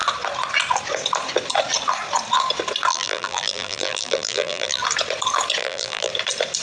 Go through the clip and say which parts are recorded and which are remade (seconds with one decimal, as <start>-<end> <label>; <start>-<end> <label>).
0.0-2.9 recorded; 2.9-4.8 remade; 4.8-5.6 recorded; 5.6-6.1 remade; 6.1-6.6 recorded